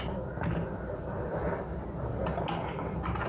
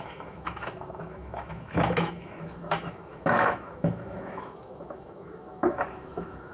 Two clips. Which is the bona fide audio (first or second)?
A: first